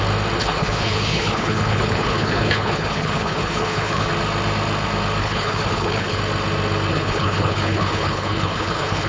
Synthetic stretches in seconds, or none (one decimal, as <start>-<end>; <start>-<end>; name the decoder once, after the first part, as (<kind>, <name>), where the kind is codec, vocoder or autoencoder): 0.4-4.1 (codec, HILCodec); 5.2-6.2; 6.9-9.1